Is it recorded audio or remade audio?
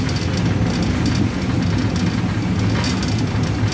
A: recorded